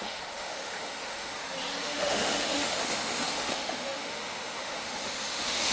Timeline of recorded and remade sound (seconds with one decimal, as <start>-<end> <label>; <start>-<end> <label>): 0.0-1.3 remade; 1.3-1.8 recorded; 1.8-5.7 remade